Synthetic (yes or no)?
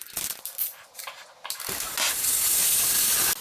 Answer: no